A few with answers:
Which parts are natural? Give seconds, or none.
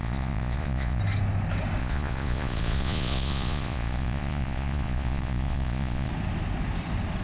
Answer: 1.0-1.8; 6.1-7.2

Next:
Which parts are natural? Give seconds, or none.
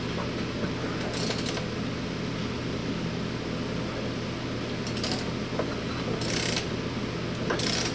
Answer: 0.0-7.9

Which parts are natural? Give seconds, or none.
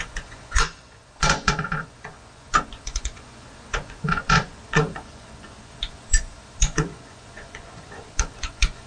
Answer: none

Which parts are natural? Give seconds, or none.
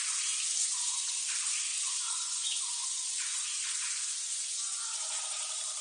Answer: 0.0-0.6; 1.2-1.7; 5.2-5.8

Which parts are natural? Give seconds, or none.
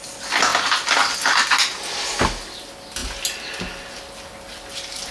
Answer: 0.0-5.1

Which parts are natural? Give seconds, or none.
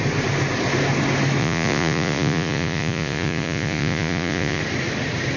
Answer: 0.0-1.4; 4.6-5.4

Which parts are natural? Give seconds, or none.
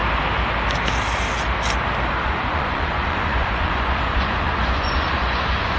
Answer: 0.0-2.2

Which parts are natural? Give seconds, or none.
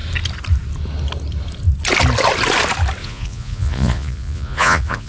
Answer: 0.0-3.0